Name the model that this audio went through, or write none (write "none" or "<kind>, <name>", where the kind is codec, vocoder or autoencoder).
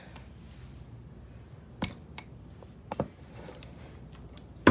none